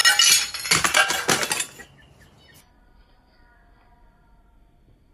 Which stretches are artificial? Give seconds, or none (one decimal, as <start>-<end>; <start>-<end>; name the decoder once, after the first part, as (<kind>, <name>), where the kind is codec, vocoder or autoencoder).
none